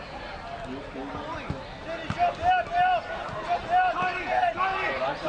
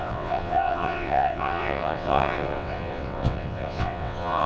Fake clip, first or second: second